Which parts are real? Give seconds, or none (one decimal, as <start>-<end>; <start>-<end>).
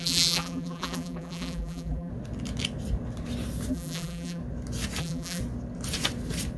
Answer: 2.1-3.7; 4.4-5.0; 5.4-6.6